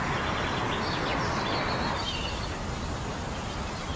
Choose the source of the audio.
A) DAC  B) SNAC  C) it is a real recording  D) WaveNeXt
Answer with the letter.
C